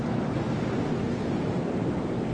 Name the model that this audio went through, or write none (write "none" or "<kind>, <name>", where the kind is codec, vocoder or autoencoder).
none